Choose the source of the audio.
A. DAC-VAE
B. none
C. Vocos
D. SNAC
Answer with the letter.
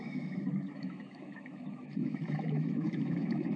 A